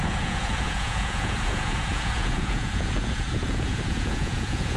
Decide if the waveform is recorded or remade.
remade